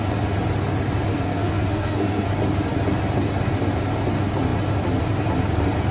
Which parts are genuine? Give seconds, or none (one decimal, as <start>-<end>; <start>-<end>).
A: 0.0-1.1; 2.3-5.9